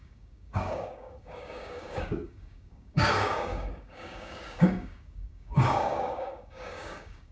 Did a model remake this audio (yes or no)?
yes